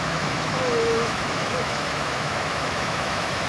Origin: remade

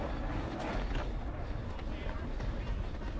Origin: recorded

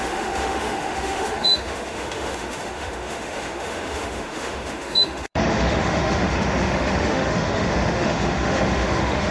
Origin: remade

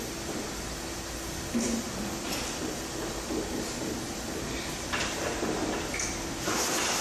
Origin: recorded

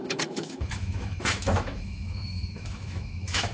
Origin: remade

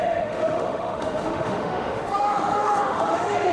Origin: remade